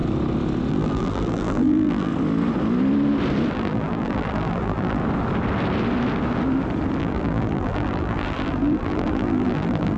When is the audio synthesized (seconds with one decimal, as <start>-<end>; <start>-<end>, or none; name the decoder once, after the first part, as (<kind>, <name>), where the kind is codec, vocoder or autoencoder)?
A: 0.7-2.1 (vocoder, BigVGAN v2); 3.5-5.0; 7.0-10.0